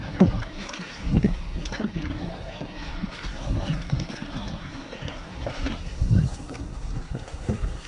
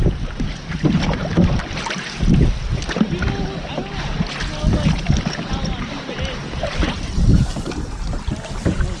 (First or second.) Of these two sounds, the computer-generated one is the first